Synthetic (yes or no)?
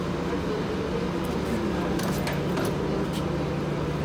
no